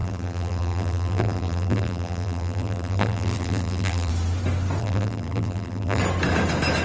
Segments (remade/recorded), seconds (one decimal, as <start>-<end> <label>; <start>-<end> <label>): 0.0-4.1 remade; 4.1-4.8 recorded; 4.8-6.0 remade; 6.0-6.8 recorded